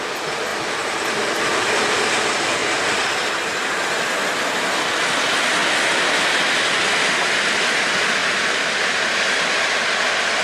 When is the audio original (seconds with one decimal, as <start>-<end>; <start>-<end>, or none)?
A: 0.0-8.2; 9.7-10.4